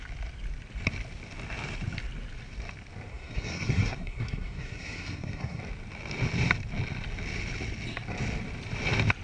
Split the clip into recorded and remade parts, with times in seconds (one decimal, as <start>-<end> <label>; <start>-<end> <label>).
0.0-3.1 recorded; 3.1-5.6 remade; 5.6-9.2 recorded